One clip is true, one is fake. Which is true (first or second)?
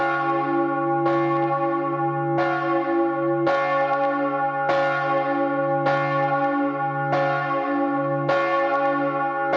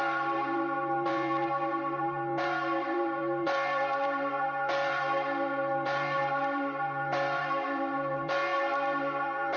first